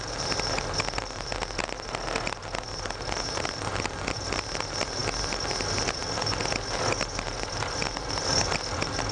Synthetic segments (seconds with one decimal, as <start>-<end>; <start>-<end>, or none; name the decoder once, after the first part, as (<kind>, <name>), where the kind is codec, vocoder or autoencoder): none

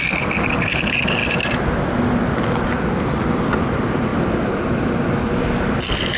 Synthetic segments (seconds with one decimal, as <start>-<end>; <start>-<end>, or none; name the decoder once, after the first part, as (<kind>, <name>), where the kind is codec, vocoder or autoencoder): none

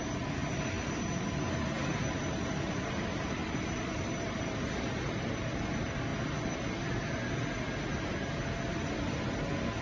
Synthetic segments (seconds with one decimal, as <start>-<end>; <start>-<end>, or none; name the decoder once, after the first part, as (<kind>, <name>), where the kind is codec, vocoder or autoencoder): 0.0-6.1 (vocoder, BigVGAN v2)